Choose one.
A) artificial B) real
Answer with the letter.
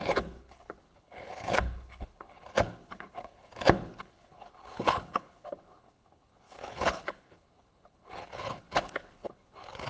A